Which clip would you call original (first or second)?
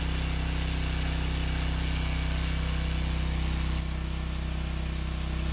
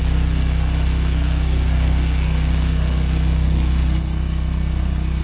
first